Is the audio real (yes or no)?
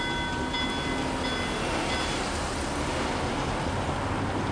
yes